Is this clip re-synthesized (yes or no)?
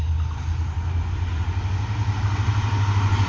no